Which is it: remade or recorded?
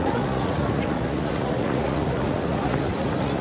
remade